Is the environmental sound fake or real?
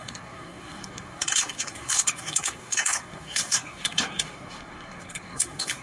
fake